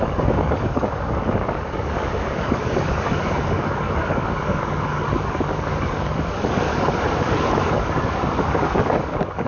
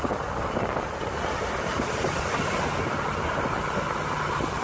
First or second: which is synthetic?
first